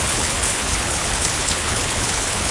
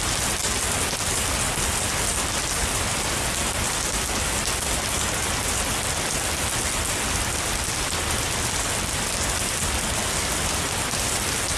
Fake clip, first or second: first